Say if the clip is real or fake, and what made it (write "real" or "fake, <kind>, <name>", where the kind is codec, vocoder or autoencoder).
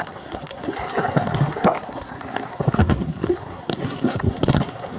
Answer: fake, codec, SNAC